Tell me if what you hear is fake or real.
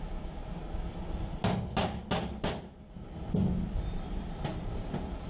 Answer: real